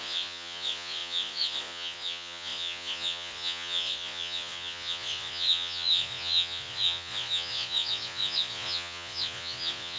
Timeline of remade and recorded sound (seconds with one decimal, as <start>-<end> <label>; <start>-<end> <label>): 0.0-10.0 remade